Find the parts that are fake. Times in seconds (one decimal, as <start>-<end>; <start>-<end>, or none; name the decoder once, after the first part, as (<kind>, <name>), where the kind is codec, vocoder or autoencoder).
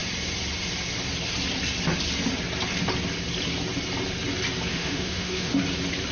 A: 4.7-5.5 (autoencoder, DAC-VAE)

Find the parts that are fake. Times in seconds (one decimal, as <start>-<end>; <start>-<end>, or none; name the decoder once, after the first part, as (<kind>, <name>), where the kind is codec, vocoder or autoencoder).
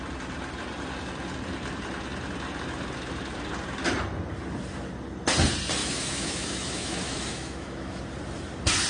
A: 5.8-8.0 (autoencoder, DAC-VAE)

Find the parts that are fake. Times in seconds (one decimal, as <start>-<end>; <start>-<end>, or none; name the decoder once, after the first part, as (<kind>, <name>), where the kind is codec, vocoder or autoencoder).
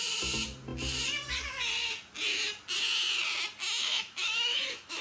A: 3.8-5.0 (autoencoder, DAC-VAE)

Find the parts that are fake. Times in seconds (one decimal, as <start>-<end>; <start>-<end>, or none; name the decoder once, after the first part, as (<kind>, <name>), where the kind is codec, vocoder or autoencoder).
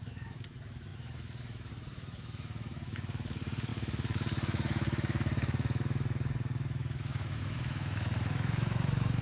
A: 0.0-9.2 (autoencoder, DAC-VAE)